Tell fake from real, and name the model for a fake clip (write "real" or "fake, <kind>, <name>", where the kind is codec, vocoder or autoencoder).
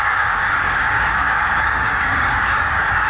fake, codec, DAC